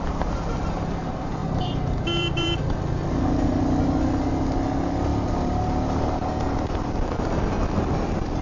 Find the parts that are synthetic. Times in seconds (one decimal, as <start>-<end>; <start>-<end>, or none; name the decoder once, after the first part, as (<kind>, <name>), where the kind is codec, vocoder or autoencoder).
1.4-2.6 (vocoder, BigVGAN v2)